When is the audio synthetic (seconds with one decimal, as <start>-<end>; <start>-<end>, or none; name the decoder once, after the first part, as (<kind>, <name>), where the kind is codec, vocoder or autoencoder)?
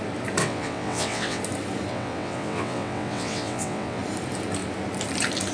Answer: 0.4-1.4 (vocoder, WaveNeXt); 1.9-4.0